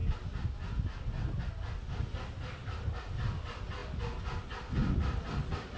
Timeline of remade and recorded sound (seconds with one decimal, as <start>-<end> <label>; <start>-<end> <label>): 0.0-5.8 recorded

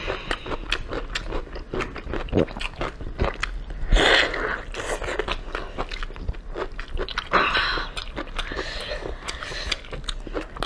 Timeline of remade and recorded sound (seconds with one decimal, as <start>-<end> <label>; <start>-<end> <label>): 0.0-10.7 recorded

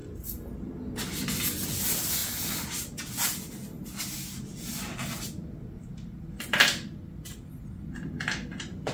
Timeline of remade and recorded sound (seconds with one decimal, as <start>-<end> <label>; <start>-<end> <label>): 0.0-2.2 remade; 2.2-2.7 recorded; 2.7-8.9 remade

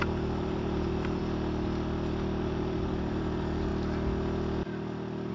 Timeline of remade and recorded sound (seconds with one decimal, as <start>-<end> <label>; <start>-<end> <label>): 0.0-1.2 remade; 1.2-2.4 recorded; 2.4-3.7 remade; 3.7-5.3 recorded